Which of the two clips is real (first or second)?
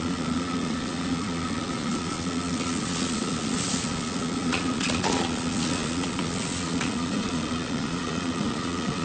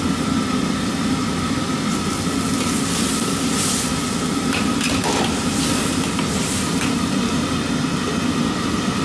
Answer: second